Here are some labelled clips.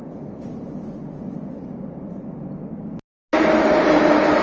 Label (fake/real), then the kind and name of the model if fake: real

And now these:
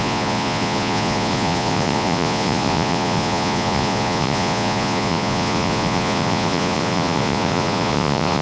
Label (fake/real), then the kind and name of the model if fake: fake, vocoder, Vocos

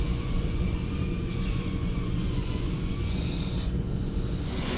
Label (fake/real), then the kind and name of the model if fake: fake, vocoder, Vocos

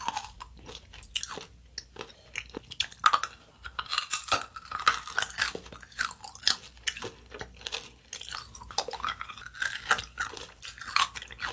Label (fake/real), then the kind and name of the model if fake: real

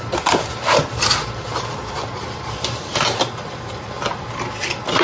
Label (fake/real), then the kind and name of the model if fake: real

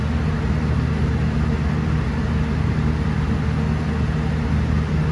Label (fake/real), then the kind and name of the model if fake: real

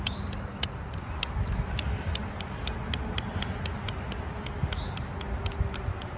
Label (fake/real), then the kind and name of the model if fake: real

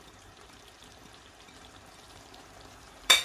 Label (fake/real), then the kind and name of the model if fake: fake, vocoder, BigVGAN v2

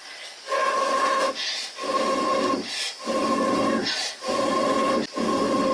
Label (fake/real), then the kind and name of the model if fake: real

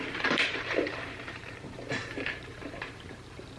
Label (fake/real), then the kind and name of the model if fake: fake, vocoder, BigVGAN v2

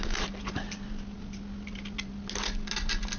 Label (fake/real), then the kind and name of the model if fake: real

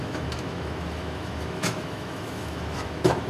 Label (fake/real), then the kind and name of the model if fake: fake, autoencoder, DAC-VAE